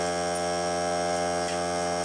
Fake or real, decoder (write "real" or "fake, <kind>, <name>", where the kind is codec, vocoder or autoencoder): real